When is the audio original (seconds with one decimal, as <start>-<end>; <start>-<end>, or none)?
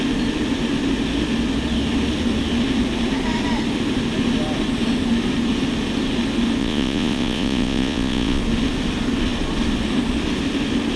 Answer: 0.0-6.6; 8.4-11.0